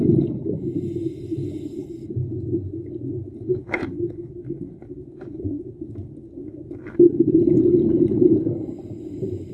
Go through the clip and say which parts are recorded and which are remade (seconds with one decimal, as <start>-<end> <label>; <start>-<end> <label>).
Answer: 0.0-9.5 recorded